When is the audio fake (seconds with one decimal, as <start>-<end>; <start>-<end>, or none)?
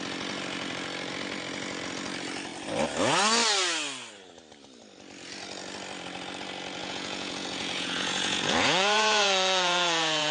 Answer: 6.8-10.3